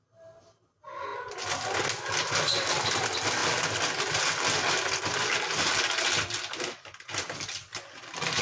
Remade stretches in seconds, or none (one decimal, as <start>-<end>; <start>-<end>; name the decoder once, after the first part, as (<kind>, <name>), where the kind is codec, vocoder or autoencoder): none